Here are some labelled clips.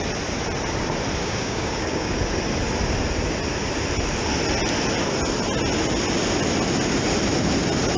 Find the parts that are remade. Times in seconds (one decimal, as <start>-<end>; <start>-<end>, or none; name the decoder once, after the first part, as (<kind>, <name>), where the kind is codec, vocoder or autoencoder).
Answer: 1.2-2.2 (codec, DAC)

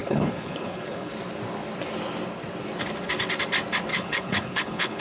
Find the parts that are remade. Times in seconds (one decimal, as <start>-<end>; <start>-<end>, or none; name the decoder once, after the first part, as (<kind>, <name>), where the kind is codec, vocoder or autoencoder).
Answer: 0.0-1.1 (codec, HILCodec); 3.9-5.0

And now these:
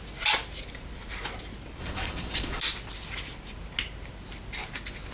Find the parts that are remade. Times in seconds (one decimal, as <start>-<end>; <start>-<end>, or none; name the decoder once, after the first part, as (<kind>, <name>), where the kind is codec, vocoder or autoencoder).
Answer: 1.8-2.6 (vocoder, Vocos)

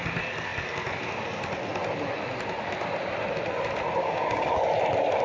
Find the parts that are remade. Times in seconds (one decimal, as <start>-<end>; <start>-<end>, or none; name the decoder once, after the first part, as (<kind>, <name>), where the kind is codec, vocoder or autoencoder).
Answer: 4.0-4.6 (codec, DAC)

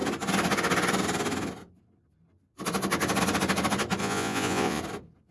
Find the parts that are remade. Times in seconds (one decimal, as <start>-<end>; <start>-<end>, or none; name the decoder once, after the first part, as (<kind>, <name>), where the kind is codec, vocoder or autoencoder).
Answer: 4.0-4.8 (vocoder, Vocos)

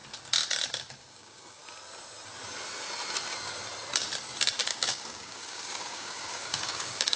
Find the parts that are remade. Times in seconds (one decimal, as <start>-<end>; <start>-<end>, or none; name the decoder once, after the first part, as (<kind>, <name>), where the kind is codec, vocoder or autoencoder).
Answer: 1.0-1.6 (codec, DAC); 4.6-7.2

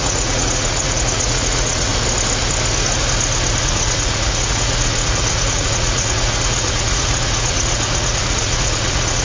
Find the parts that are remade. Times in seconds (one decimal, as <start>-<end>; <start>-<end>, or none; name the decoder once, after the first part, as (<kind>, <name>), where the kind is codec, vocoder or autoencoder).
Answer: 0.0-1.9 (vocoder, Vocos); 3.6-9.2

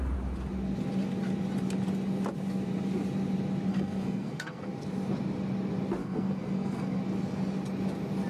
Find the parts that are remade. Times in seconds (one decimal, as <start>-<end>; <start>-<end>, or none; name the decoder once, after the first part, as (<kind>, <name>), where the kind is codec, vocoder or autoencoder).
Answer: 3.7-4.7 (codec, SNAC); 6.0-7.0